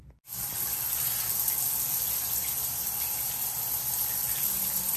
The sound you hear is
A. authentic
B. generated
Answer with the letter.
A